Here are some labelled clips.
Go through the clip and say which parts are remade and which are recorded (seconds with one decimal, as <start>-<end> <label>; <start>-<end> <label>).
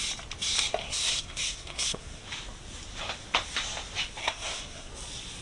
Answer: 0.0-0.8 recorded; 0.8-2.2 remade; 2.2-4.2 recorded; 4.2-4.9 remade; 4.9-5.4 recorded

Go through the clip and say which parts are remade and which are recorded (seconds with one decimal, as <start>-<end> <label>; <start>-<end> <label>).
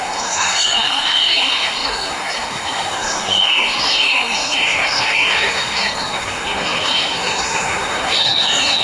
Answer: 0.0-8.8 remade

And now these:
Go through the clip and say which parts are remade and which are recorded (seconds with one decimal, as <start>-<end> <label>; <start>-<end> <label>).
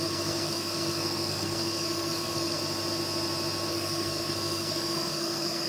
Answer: 0.0-2.6 remade; 2.6-3.7 recorded; 3.7-5.7 remade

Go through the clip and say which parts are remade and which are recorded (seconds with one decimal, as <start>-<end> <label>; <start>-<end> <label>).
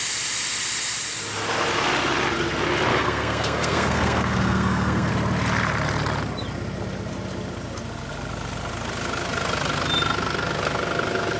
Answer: 0.0-2.9 recorded; 2.9-5.1 remade; 5.1-11.4 recorded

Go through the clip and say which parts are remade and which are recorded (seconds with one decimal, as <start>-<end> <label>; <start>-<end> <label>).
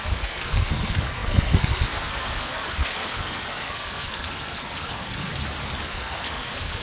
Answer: 0.0-5.3 remade; 5.3-5.8 recorded; 5.8-6.8 remade